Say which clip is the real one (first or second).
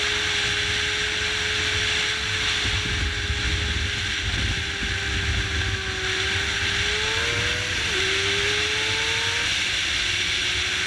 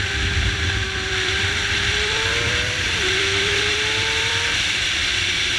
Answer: first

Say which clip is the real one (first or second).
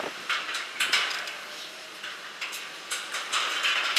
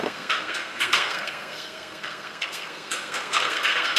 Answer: first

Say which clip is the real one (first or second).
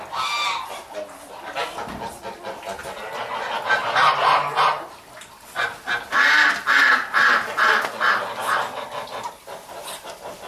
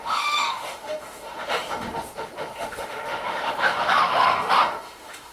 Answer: first